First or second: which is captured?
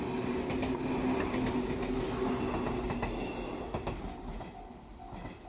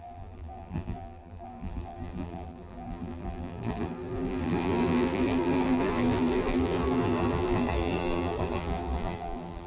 first